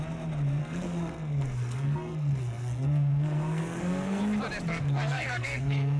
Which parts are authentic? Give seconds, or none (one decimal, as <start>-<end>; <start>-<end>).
0.0-0.6; 4.2-4.7